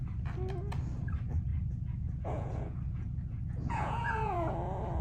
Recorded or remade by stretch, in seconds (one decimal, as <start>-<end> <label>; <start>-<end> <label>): 0.0-1.5 recorded; 1.5-4.5 remade; 4.5-5.0 recorded